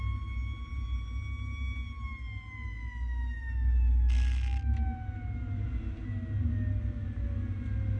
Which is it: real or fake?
real